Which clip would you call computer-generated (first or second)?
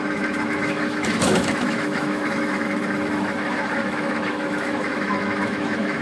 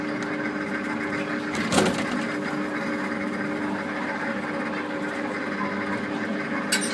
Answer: first